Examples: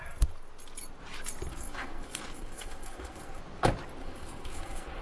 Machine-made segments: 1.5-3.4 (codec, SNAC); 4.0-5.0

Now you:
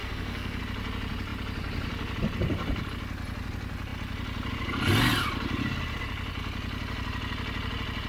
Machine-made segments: 0.0-0.6 (codec, SNAC)

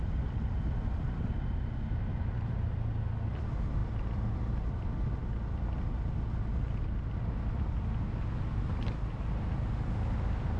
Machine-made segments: none

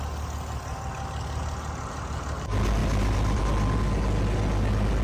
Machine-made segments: 2.8-3.4 (vocoder, BigVGAN v2)

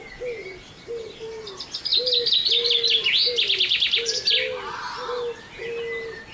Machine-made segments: none

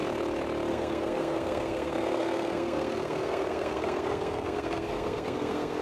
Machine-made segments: 0.7-5.8 (codec, SNAC)

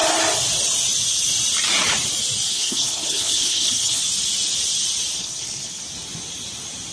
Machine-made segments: 2.5-4.0 (codec, HILCodec); 5.2-5.8